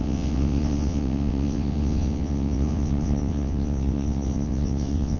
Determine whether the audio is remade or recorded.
remade